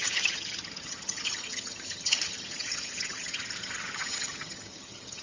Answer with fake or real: fake